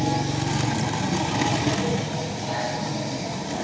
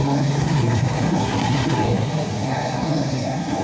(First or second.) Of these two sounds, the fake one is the second